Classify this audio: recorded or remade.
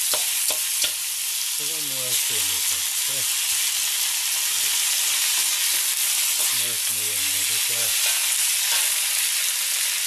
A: recorded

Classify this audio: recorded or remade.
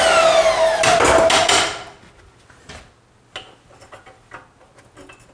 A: recorded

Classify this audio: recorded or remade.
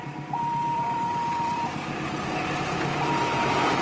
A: remade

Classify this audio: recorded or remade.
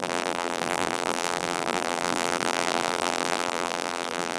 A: remade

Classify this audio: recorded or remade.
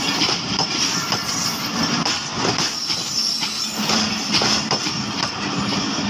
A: recorded